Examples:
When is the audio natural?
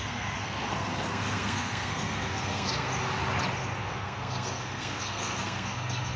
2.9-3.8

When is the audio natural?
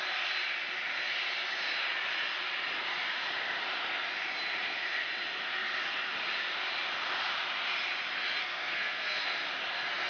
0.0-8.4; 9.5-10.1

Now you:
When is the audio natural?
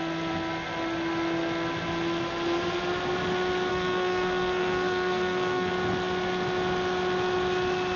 0.0-3.7; 5.7-8.0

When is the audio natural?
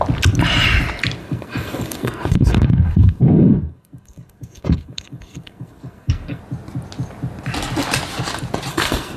0.0-1.2; 6.4-8.7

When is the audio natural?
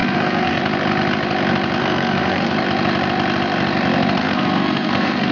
0.6-1.8; 2.5-4.2